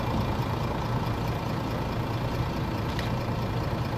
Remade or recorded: recorded